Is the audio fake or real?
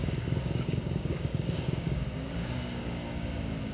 fake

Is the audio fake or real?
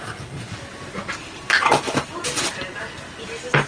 real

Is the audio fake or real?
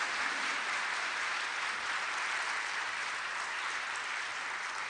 real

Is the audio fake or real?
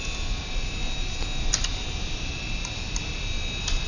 real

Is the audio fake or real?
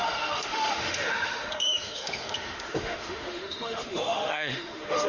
fake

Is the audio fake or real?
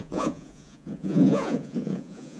fake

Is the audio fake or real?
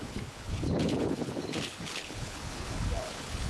fake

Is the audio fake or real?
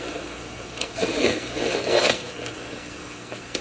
fake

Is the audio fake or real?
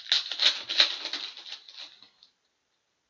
real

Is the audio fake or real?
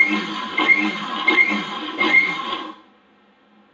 real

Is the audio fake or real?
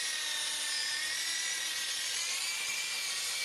real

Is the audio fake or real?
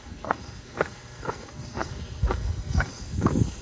fake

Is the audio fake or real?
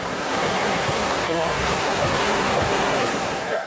fake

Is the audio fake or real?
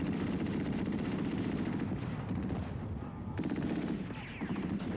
fake